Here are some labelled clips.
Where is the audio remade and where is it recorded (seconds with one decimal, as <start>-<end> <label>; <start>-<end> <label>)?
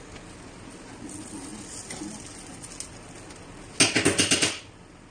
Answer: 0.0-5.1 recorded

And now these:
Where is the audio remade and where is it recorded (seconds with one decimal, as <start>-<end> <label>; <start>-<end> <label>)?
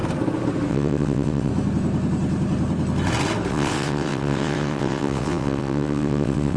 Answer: 0.0-0.7 recorded; 0.7-1.5 remade; 1.5-3.5 recorded; 3.5-6.6 remade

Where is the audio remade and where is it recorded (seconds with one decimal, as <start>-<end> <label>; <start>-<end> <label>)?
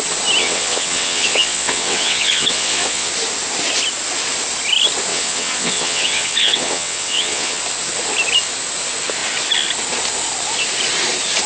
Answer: 0.0-0.4 recorded; 0.4-3.1 remade; 3.1-5.1 recorded; 5.1-7.6 remade; 7.6-11.5 recorded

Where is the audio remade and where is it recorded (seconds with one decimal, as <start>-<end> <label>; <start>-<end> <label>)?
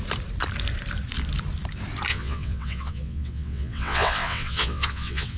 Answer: 0.0-2.1 recorded; 2.1-5.4 remade